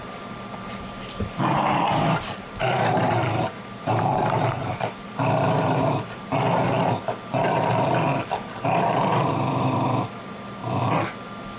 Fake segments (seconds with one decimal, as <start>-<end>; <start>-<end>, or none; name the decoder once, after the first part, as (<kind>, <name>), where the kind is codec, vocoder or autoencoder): 0.0-10.6 (vocoder, BigVGAN v2)